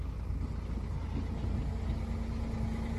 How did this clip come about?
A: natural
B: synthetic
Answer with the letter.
A